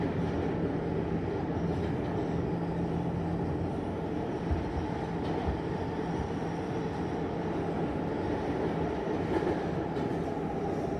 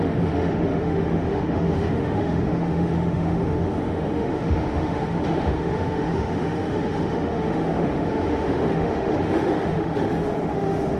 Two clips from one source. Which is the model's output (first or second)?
second